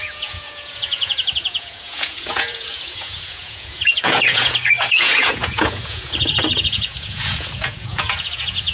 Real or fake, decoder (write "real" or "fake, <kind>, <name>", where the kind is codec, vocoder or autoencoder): fake, vocoder, Vocos